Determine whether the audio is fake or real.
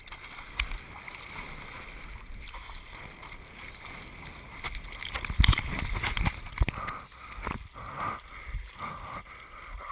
real